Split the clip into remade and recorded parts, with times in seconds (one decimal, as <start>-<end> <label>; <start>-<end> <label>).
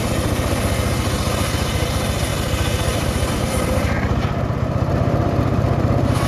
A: 0.0-2.3 recorded; 2.3-6.3 remade